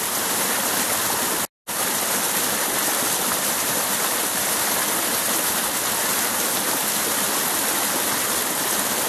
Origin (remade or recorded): recorded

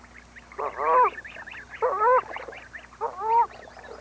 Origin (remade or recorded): recorded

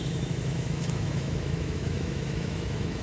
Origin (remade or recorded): remade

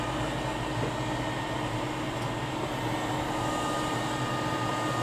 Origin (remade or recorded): recorded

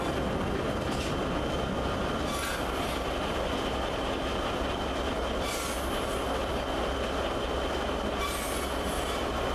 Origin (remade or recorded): recorded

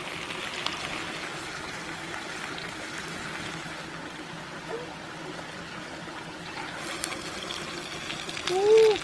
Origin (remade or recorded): recorded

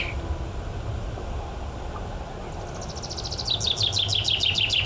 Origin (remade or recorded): recorded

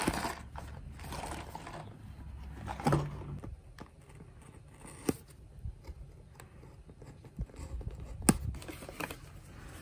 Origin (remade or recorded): recorded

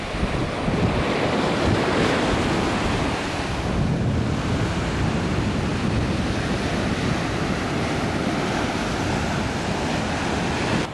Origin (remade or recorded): recorded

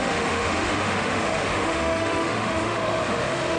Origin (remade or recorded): remade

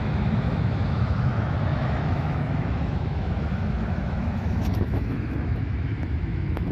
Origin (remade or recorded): remade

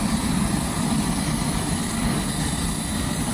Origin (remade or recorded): recorded